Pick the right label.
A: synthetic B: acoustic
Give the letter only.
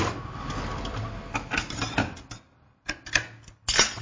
B